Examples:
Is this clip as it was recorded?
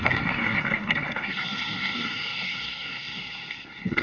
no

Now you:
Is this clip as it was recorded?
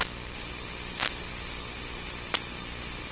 yes